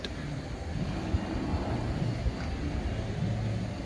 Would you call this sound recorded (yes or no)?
yes